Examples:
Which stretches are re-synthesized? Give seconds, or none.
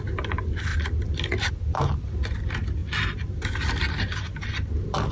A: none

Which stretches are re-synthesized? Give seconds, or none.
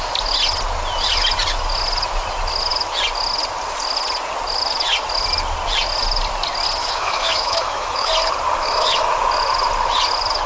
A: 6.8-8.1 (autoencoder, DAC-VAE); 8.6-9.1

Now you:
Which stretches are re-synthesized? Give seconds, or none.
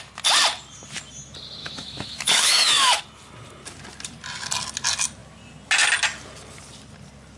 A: 1.6-3.0 (autoencoder, DAC-VAE)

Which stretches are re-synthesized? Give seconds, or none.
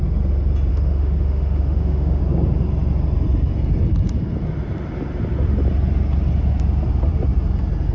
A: 0.7-2.2 (autoencoder, DAC-VAE)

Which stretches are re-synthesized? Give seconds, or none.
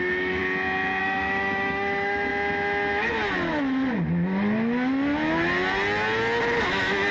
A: 0.0-0.4 (autoencoder, DAC-VAE); 1.0-2.3; 6.6-7.1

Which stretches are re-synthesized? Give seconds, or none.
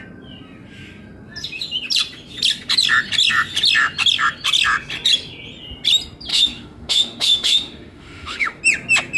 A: 6.3-8.6 (autoencoder, DAC-VAE)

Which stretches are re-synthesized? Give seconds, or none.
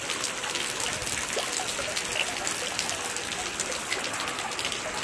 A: none